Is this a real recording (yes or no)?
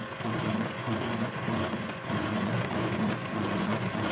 no